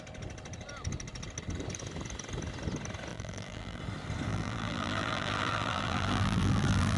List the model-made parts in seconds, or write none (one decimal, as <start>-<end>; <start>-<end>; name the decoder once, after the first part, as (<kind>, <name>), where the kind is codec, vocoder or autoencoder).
3.1-3.8 (vocoder, BigVGAN v2); 4.3-7.0